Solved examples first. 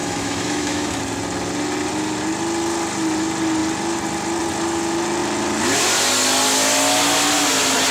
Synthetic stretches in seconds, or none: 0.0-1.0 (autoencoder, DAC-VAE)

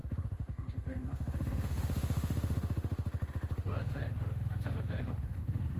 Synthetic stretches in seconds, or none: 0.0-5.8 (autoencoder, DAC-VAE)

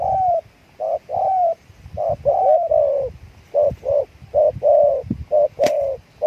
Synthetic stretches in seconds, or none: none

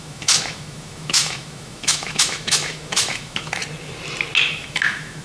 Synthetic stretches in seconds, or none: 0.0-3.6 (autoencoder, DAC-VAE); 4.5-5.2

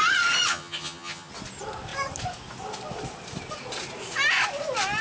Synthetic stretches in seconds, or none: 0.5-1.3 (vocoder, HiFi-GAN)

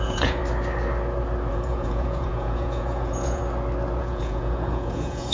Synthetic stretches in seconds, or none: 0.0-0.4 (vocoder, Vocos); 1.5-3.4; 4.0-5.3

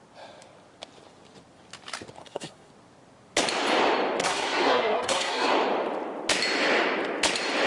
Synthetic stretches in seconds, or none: 2.2-2.7 (codec, SNAC); 4.2-5.5